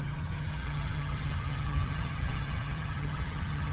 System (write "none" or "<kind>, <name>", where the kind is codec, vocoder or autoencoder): vocoder, HiFi-GAN